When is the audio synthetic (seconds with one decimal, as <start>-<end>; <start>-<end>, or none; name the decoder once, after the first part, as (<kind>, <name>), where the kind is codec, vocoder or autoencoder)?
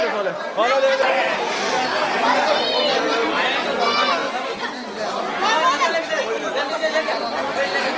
none